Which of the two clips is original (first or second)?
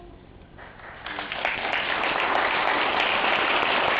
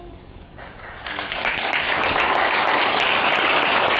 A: first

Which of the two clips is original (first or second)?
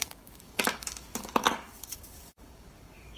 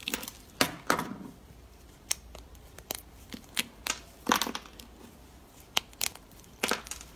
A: second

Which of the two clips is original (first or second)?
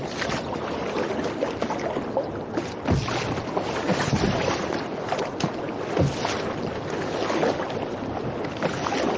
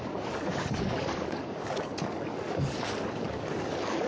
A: first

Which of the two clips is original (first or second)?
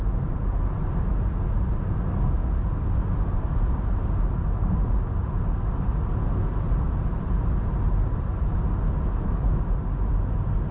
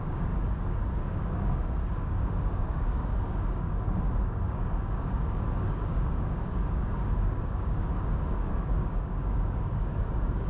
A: first